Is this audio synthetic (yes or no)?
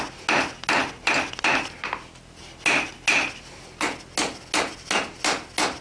no